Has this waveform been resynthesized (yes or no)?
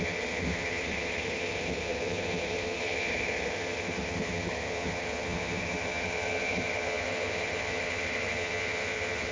yes